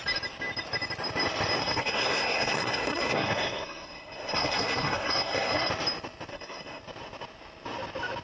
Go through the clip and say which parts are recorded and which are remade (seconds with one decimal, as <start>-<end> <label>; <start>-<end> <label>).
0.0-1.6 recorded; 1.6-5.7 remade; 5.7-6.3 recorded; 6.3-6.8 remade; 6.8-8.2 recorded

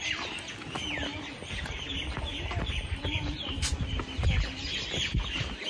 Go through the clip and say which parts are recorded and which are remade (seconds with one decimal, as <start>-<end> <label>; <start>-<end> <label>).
0.0-1.4 recorded; 1.4-4.1 remade; 4.1-5.7 recorded

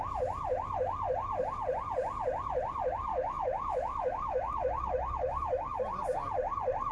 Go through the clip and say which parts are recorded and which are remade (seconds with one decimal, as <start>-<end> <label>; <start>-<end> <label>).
0.0-3.1 recorded; 3.1-5.8 remade; 5.8-6.9 recorded

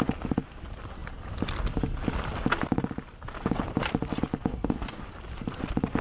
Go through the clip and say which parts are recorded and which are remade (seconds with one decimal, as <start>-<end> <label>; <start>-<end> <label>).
0.0-4.5 recorded; 4.5-5.0 remade; 5.0-6.0 recorded

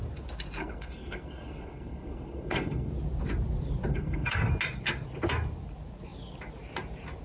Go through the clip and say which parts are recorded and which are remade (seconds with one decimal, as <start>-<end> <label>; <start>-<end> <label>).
0.0-0.6 recorded; 0.6-2.9 remade; 2.9-3.9 recorded; 3.9-4.5 remade; 4.5-7.2 recorded

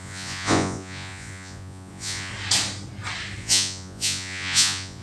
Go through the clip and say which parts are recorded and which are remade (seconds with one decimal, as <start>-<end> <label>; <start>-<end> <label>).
0.0-2.3 remade; 2.3-3.4 recorded; 3.4-5.0 remade

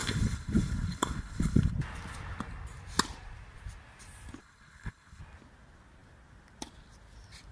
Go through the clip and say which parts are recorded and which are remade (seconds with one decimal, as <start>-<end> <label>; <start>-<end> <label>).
0.0-1.7 remade; 1.7-4.4 recorded; 4.4-5.2 remade; 5.2-7.5 recorded

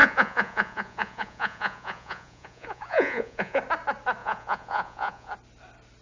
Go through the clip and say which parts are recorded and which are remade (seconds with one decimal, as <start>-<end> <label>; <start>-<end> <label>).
0.0-3.6 remade; 3.6-4.2 recorded; 4.2-5.3 remade; 5.3-6.0 recorded